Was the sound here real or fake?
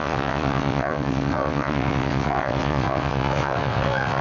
fake